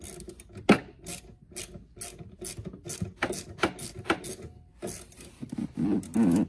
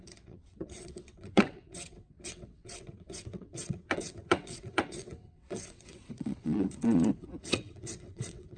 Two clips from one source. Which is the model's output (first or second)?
second